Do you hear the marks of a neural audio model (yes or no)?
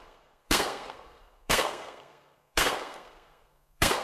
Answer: yes